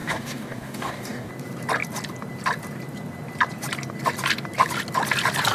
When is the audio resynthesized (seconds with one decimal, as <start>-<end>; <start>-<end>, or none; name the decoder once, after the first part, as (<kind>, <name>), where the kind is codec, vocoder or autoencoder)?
0.0-1.3 (codec, DAC)